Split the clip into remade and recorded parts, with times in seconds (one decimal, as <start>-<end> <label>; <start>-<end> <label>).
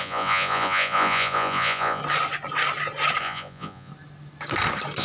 0.0-2.0 remade; 2.0-3.2 recorded; 3.2-3.9 remade; 3.9-5.0 recorded